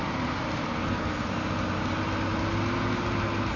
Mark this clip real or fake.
real